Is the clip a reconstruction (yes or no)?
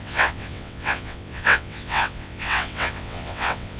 yes